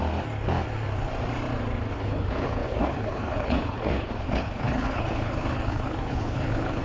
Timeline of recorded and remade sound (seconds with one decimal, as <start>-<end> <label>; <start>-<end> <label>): 0.0-1.9 recorded; 1.9-6.8 remade